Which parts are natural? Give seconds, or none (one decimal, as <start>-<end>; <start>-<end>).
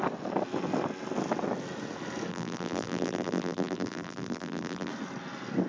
0.0-2.3; 4.9-5.7